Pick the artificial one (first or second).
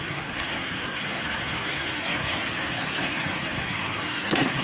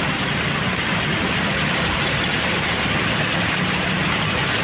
first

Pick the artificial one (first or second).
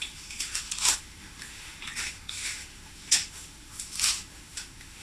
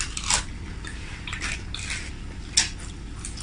first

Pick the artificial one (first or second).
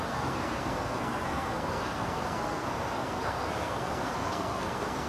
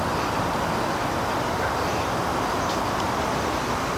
first